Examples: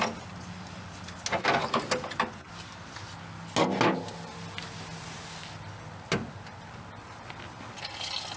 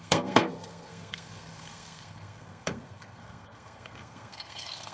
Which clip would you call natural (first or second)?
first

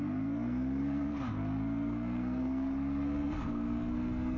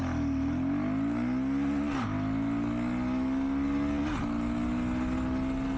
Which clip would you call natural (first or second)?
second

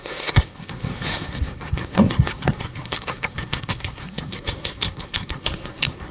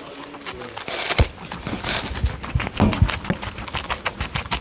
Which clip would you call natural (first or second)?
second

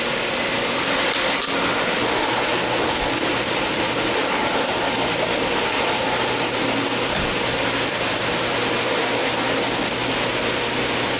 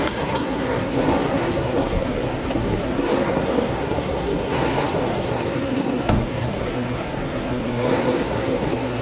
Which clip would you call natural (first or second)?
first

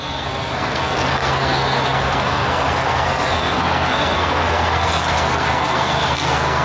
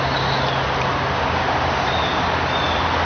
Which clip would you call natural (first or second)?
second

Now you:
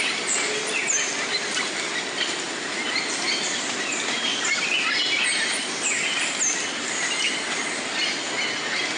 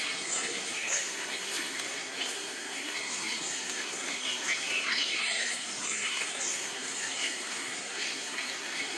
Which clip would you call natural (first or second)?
first